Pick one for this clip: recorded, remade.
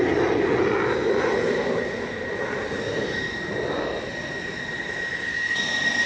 recorded